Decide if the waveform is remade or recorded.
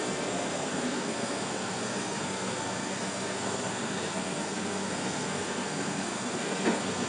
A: remade